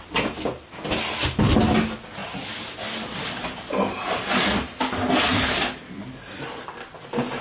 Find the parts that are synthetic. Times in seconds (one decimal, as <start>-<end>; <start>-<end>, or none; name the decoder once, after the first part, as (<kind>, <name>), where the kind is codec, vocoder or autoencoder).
none